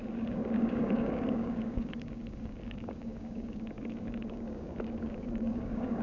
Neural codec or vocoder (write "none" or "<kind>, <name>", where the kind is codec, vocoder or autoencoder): codec, DAC